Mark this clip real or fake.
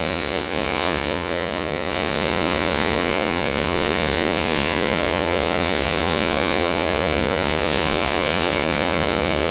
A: fake